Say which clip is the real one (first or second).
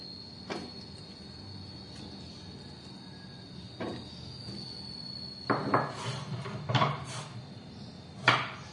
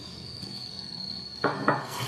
first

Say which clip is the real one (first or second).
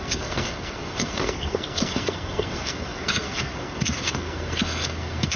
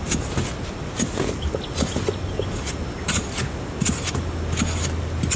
second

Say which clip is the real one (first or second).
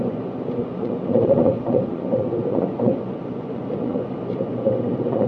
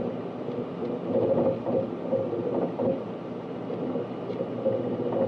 second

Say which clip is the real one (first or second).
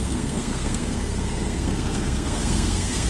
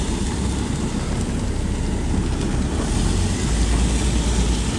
second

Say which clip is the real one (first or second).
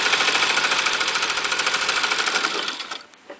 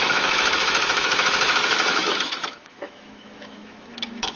first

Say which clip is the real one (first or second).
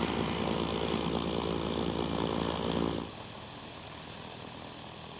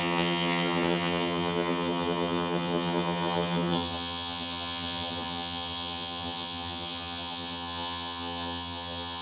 first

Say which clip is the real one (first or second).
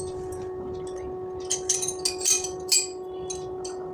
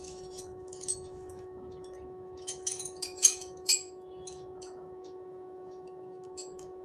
first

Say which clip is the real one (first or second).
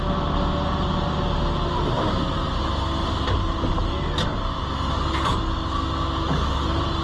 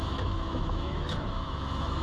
first